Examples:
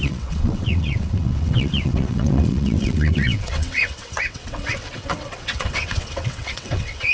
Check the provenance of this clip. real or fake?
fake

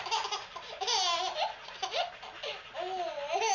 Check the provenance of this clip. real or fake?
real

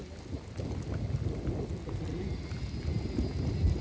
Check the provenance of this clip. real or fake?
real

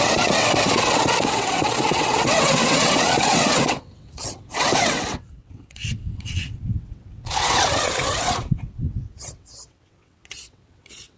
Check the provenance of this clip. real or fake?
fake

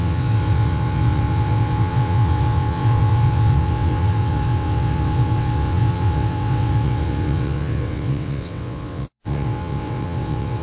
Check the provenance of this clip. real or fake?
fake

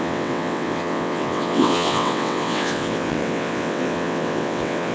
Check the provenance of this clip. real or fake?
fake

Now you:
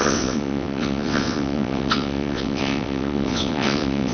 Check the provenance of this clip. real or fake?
fake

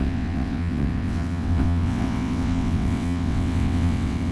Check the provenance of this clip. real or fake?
fake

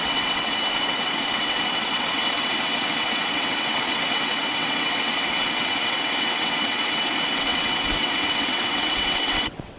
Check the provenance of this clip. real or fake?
fake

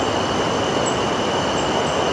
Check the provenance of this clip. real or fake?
real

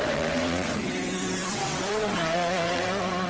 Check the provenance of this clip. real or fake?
fake